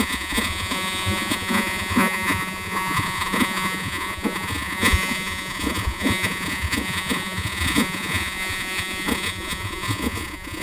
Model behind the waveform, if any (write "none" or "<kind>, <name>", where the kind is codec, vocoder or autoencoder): vocoder, Vocos